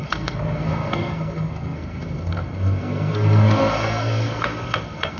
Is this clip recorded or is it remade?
remade